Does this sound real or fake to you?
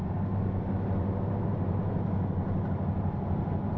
real